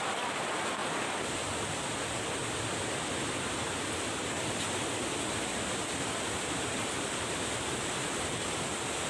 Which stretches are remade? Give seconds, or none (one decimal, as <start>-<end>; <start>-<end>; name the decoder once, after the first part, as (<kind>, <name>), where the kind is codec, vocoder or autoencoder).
5.5-8.2 (vocoder, BigVGAN v2)